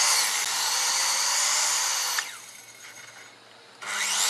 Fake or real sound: real